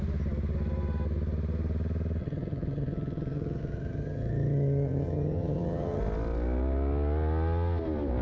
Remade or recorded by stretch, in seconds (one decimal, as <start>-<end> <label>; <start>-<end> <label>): 0.0-2.2 recorded; 2.2-6.0 remade; 6.0-8.2 recorded